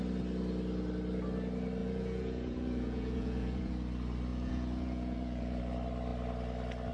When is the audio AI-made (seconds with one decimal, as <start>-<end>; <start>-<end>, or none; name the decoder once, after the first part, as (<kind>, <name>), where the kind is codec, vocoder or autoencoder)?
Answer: 1.8-3.7 (vocoder, Vocos); 4.3-5.6

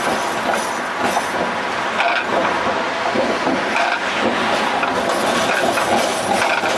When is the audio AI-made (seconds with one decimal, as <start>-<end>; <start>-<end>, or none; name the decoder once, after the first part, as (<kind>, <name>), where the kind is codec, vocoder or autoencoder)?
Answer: none

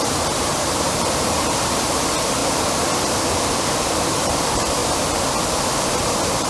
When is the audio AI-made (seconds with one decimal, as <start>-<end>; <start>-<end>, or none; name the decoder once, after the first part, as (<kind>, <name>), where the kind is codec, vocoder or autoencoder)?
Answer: 0.0-2.4 (vocoder, BigVGAN v2); 3.7-4.8; 5.9-6.5

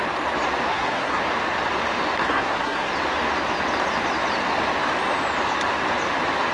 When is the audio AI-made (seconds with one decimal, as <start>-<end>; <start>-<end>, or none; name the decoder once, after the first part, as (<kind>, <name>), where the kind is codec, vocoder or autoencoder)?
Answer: 0.7-1.2 (codec, SNAC); 2.2-2.9

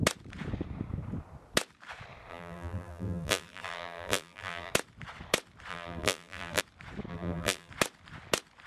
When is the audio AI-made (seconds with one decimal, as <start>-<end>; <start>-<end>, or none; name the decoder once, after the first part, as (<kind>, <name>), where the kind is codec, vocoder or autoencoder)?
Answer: 2.3-4.7 (vocoder, BigVGAN v2); 5.7-6.6; 7.1-7.7

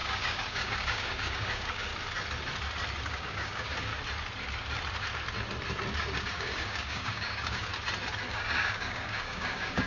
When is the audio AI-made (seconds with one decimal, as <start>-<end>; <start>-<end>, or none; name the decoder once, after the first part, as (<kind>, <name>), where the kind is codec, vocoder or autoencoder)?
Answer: 0.0-1.9 (codec, DAC); 3.1-3.9; 6.2-7.7; 8.3-9.9